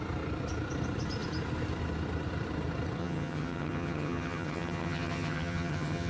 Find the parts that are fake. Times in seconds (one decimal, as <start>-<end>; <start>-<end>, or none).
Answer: 3.0-6.1